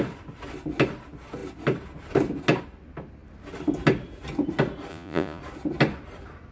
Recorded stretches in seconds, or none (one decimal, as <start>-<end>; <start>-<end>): 0.0-4.9; 5.4-6.5